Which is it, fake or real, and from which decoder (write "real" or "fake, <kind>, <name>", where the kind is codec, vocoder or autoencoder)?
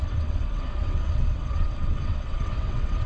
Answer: fake, vocoder, WaveNeXt